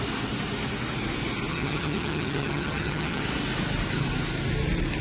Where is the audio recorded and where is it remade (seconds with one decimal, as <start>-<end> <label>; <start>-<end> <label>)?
0.0-1.5 recorded; 1.5-3.2 remade; 3.2-5.0 recorded